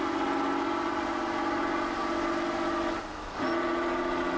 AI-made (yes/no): no